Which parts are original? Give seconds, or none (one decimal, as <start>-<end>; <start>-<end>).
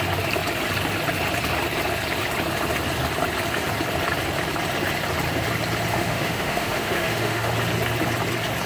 0.0-5.9; 7.5-8.7